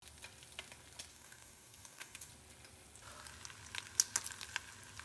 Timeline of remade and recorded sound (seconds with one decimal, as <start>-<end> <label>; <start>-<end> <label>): 0.0-1.1 recorded; 1.1-2.3 remade; 2.3-5.0 recorded